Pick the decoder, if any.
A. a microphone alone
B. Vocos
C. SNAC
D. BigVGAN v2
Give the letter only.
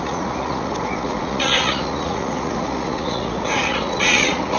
B